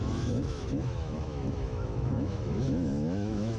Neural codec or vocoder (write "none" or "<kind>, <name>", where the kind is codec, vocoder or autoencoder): autoencoder, DAC-VAE